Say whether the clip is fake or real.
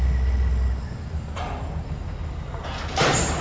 real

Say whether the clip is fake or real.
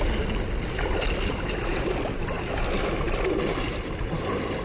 real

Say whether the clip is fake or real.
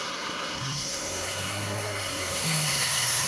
fake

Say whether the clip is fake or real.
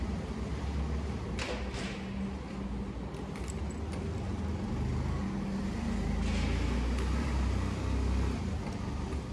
real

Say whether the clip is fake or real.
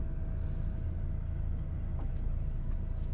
real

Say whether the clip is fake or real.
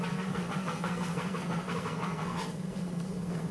fake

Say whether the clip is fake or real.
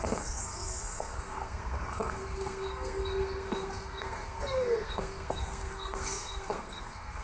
fake